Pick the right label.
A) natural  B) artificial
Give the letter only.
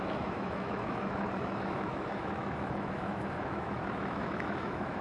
B